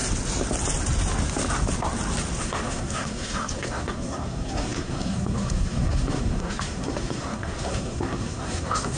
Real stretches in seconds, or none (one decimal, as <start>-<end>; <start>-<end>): 0.0-2.4